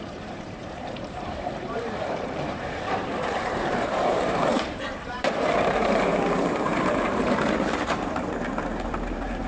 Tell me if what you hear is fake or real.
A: fake